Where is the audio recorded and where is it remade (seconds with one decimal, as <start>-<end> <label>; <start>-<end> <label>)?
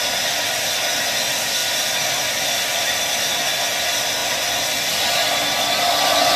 0.0-1.6 recorded; 1.6-3.3 remade; 3.3-6.4 recorded